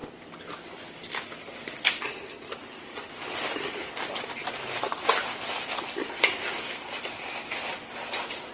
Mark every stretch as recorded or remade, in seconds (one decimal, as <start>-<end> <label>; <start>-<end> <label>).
0.0-8.5 recorded